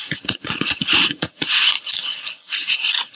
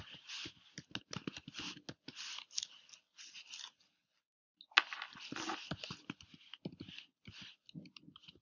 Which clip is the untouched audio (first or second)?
second